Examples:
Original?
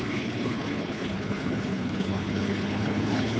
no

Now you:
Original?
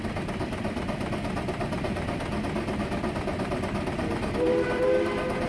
yes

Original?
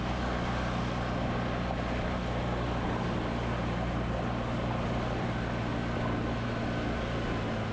yes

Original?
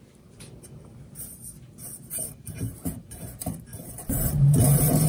no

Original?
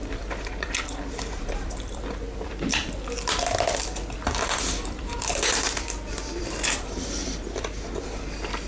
no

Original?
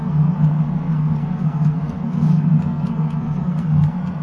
no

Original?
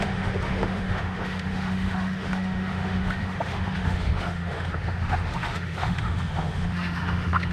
no